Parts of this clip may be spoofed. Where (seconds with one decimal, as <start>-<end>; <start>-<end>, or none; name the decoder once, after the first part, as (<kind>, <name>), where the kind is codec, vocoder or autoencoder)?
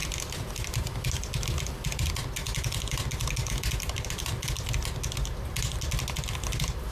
none